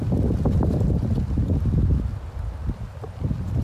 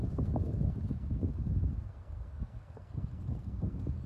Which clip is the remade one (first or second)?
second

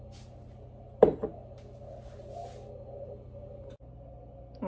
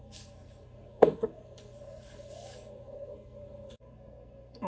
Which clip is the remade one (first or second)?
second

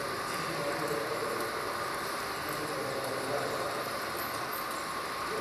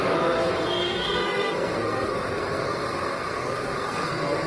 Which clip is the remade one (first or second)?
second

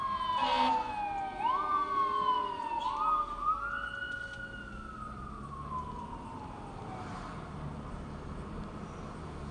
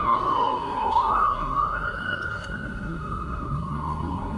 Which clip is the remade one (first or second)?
second